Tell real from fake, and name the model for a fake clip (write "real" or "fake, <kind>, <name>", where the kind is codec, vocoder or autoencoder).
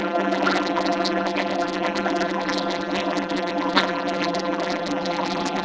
fake, vocoder, BigVGAN v2